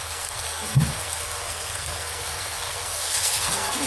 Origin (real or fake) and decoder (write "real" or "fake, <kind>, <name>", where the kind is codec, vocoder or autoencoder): fake, codec, SNAC